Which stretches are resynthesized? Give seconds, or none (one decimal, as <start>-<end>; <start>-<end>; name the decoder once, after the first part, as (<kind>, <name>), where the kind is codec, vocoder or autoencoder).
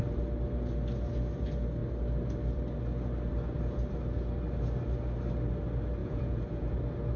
6.0-6.7 (vocoder, Vocos)